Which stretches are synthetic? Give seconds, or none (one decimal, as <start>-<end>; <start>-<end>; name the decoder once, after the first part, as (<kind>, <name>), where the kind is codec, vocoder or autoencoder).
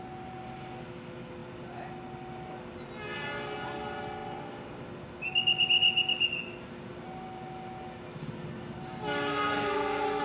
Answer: 9.3-10.2 (codec, SNAC)